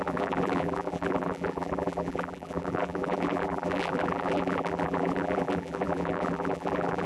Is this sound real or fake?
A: fake